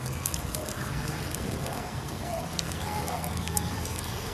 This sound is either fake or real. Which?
fake